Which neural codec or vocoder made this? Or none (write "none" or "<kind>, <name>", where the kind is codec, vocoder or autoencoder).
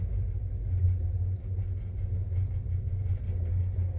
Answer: none